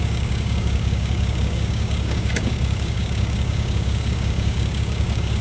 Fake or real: fake